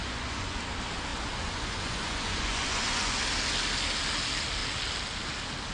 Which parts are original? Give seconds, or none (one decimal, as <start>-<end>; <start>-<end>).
0.6-1.1; 3.2-5.7

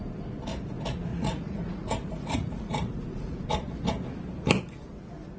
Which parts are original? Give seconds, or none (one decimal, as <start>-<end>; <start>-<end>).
0.0-1.1; 3.5-5.4

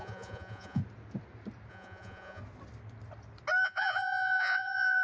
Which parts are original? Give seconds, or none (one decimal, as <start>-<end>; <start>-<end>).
0.8-1.7; 2.4-3.6